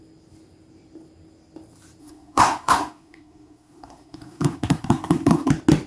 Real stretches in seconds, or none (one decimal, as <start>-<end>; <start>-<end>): 0.0-2.0; 5.5-5.9